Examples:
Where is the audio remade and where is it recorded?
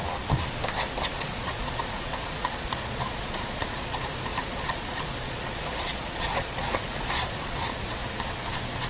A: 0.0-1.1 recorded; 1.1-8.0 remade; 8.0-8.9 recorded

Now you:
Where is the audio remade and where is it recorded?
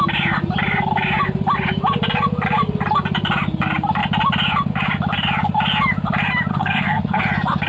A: 0.0-6.5 recorded; 6.5-7.2 remade; 7.2-7.7 recorded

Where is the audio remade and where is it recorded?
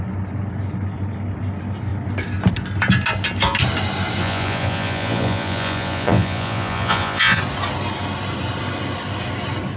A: 0.0-4.2 recorded; 4.2-7.4 remade; 7.4-9.8 recorded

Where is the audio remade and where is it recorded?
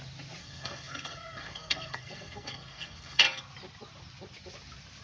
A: 0.0-0.4 recorded; 0.4-3.4 remade; 3.4-5.0 recorded